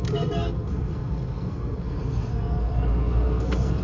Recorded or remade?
remade